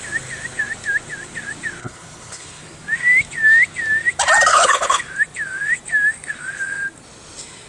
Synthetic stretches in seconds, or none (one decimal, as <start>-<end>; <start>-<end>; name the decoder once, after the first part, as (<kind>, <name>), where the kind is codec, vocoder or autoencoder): 1.8-2.6 (codec, HILCodec); 4.5-5.0